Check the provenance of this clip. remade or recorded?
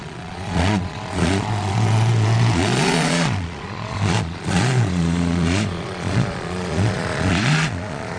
remade